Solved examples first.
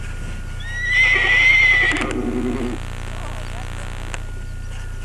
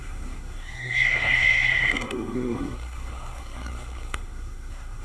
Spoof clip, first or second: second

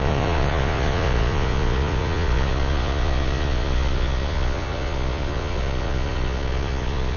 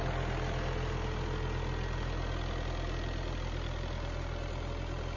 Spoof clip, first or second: first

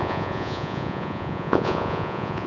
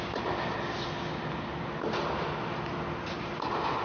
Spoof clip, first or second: first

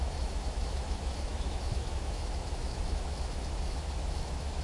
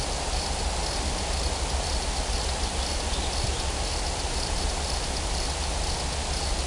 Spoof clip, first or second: first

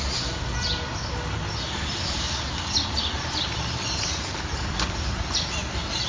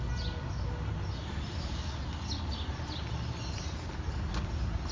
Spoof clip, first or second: first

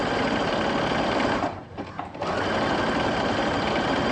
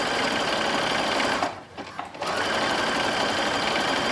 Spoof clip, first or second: first